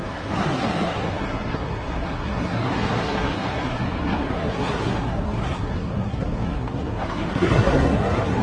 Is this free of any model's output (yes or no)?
no